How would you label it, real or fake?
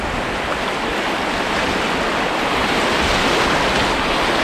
real